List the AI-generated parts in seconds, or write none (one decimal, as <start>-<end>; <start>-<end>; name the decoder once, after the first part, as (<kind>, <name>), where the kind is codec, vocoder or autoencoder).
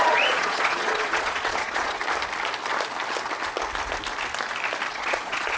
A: 0.0-2.0 (vocoder, Vocos); 4.9-5.6